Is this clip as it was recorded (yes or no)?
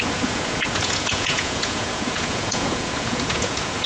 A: no